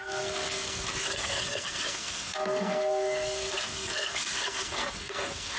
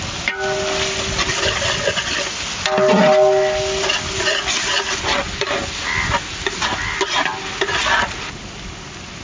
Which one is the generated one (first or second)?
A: first